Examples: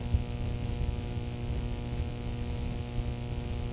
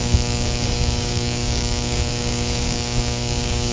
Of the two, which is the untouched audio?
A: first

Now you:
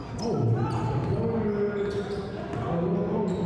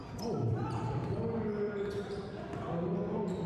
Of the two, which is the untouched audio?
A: first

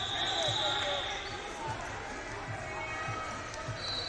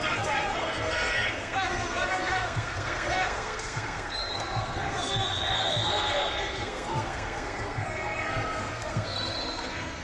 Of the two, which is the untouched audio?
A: first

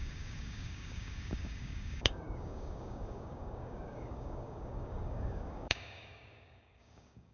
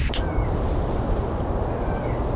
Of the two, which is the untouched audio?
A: second